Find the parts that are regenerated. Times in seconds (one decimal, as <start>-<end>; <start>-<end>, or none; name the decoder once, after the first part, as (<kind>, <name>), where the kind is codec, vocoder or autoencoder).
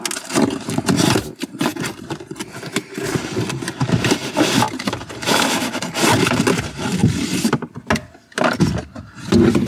7.0-7.7 (vocoder, BigVGAN v2)